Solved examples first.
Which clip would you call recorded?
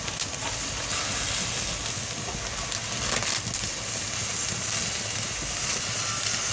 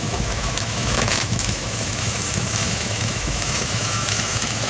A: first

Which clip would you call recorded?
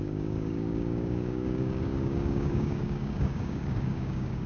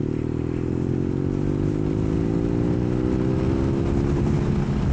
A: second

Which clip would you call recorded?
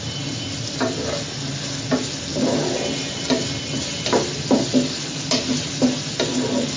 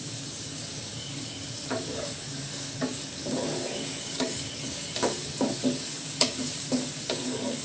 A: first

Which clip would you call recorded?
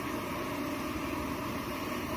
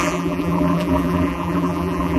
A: first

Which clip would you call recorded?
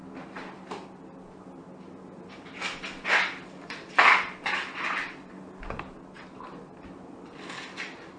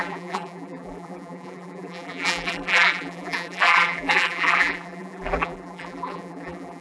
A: first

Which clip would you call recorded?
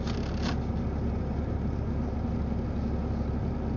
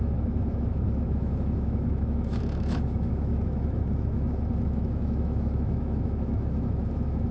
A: first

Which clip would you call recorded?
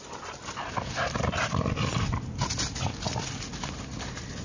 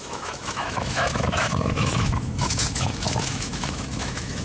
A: first